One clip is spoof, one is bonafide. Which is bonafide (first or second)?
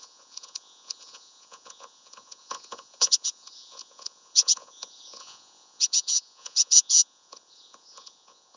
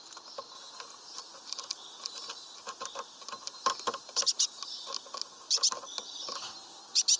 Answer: second